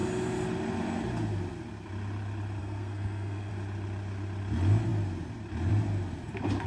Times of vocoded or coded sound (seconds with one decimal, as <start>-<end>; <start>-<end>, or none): 2.6-3.5